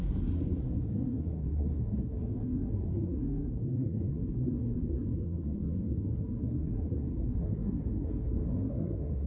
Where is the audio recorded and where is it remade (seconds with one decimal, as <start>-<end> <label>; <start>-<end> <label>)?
0.0-9.3 remade